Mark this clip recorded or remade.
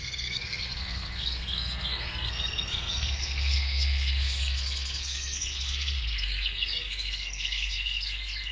remade